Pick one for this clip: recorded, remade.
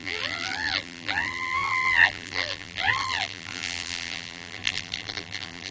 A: remade